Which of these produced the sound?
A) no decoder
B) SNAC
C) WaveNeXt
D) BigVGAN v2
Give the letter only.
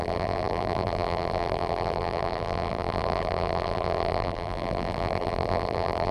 D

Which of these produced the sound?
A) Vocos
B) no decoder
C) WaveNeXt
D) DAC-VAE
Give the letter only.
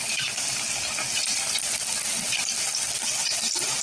B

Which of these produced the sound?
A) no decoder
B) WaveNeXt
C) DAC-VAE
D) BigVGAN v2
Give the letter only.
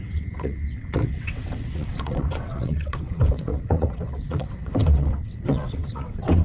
B